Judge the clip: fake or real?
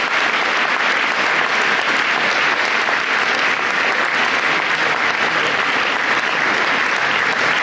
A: real